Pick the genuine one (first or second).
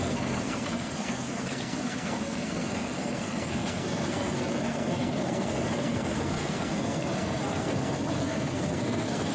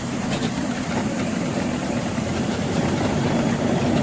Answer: second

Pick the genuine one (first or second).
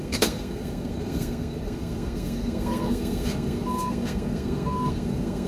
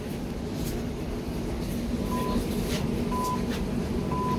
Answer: second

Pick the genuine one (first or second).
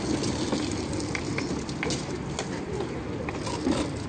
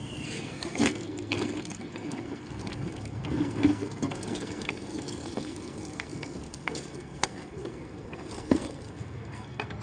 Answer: first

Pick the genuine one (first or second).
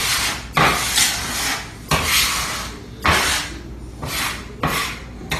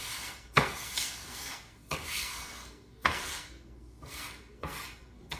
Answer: first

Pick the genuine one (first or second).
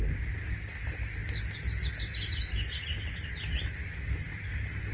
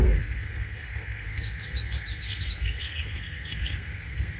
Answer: first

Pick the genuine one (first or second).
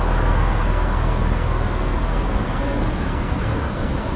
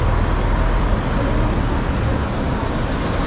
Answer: second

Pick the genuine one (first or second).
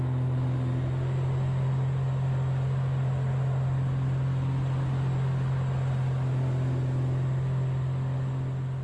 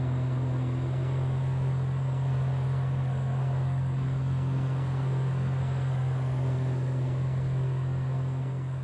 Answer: first